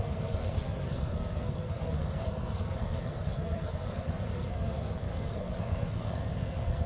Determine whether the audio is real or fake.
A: fake